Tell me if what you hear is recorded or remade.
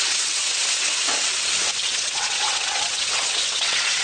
remade